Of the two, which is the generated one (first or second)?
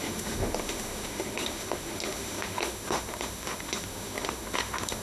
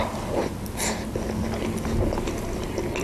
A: first